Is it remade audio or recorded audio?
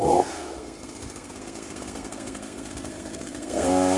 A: remade